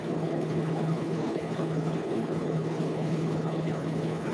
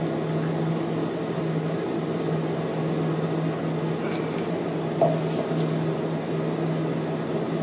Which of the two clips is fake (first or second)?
first